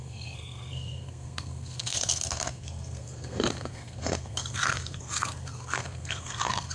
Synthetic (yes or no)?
yes